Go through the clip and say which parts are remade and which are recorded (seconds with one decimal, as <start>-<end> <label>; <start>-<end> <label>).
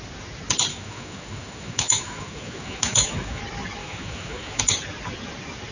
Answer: 0.0-0.7 recorded; 0.7-3.4 remade; 3.4-3.8 recorded; 3.8-4.6 remade; 4.6-5.7 recorded